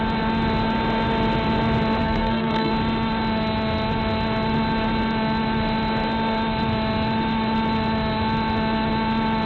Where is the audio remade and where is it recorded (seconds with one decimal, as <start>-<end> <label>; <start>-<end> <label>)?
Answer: 0.0-2.0 recorded; 2.0-2.7 remade; 2.7-9.5 recorded